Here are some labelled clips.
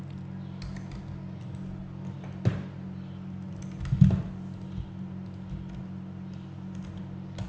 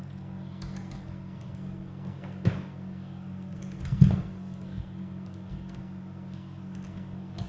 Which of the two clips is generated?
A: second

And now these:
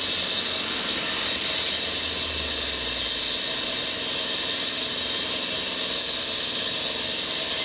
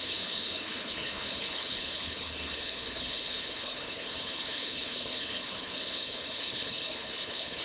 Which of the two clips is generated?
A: second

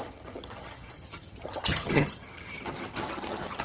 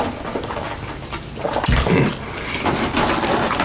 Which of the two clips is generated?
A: first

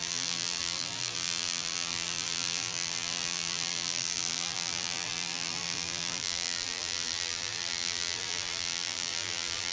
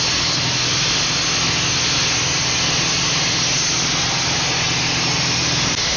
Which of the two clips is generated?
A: first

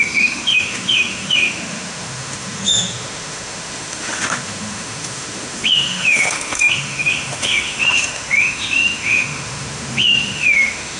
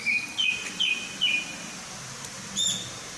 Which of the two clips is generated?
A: first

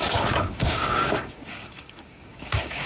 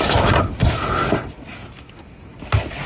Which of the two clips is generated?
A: first